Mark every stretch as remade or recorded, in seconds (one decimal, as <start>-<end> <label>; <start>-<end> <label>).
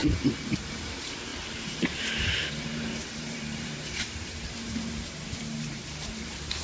0.0-0.5 recorded; 0.5-6.6 remade